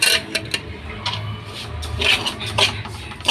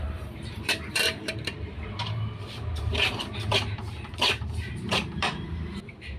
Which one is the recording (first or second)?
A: first